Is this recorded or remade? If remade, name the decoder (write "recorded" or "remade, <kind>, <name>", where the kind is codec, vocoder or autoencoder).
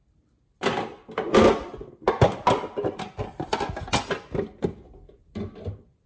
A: recorded